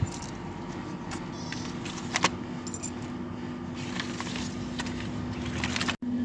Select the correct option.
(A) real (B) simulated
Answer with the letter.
A